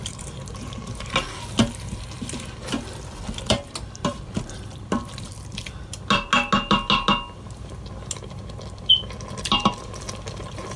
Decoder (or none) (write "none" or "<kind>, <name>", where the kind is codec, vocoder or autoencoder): none